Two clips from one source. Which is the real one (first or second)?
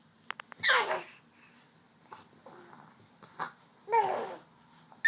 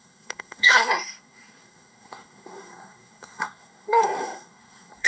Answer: first